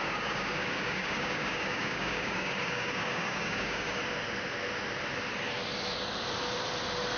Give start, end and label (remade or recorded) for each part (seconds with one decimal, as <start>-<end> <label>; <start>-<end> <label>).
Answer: 0.0-4.0 remade; 4.0-7.2 recorded